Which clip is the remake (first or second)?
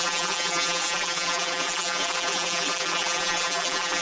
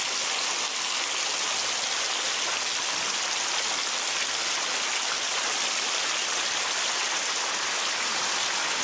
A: first